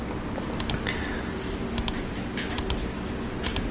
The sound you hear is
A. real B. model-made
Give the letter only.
A